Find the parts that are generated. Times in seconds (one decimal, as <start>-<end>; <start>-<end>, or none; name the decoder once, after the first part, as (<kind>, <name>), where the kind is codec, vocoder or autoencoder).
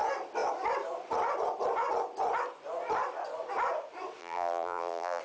4.2-5.2 (vocoder, BigVGAN v2)